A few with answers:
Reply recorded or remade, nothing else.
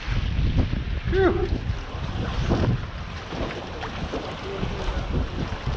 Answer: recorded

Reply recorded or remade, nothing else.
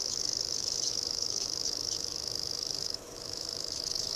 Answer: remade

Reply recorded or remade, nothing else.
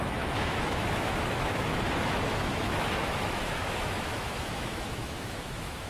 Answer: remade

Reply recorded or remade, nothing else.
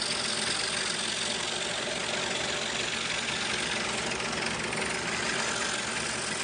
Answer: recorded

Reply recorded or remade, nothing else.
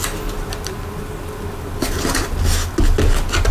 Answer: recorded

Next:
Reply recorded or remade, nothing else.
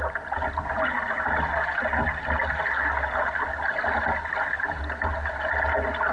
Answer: recorded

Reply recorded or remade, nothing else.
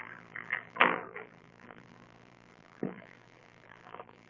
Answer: remade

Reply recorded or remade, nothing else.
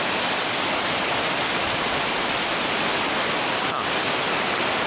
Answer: recorded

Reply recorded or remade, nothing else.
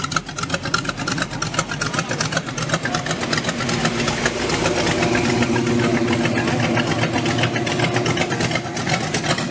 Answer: recorded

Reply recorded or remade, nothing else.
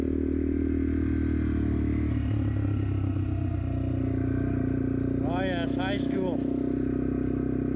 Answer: recorded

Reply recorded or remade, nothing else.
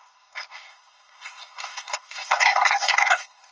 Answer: remade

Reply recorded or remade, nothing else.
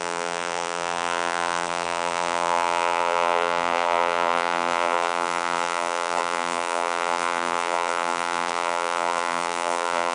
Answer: remade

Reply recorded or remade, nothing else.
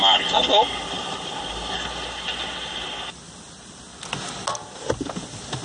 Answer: recorded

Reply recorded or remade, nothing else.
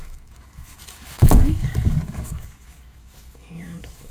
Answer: remade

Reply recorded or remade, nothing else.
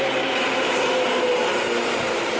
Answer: recorded